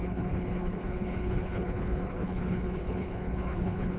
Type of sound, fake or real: fake